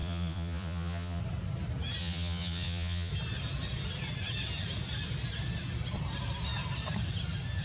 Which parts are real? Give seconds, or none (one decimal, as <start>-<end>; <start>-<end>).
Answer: 1.2-2.0; 3.1-7.6

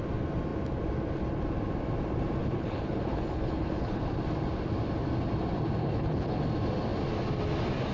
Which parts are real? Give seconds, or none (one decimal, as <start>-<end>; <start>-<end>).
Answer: 0.0-2.4; 4.0-5.8; 6.4-7.9

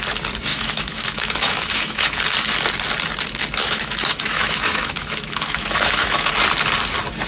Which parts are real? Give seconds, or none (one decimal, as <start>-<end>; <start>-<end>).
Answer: 0.0-0.5; 2.2-3.6; 6.3-7.3

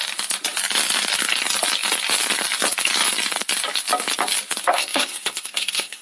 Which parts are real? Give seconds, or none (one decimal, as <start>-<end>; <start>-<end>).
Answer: 0.0-4.7

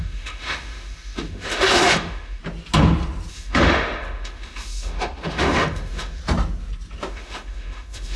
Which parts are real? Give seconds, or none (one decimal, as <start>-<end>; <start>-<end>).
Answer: 2.4-3.3; 6.2-7.1